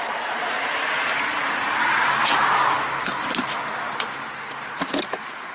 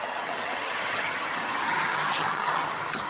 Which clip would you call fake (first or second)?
second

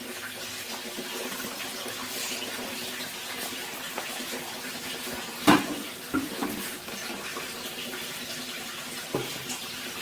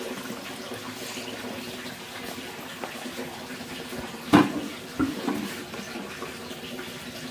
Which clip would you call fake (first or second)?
first